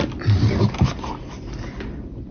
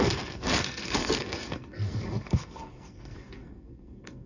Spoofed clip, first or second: second